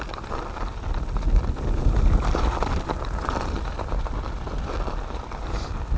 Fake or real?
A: real